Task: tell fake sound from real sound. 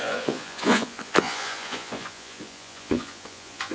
fake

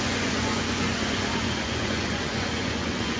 fake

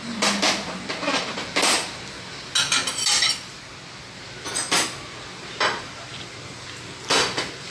real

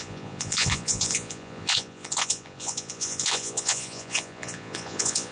fake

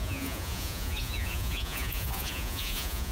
fake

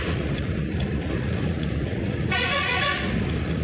fake